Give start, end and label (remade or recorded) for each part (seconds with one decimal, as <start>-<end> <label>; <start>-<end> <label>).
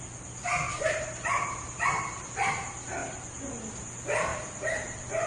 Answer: 0.0-0.7 recorded; 0.7-2.3 remade; 2.3-4.3 recorded; 4.3-5.3 remade